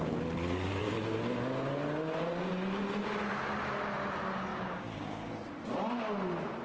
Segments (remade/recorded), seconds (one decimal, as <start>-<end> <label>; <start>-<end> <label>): 0.0-4.5 recorded; 4.5-5.3 remade; 5.3-6.6 recorded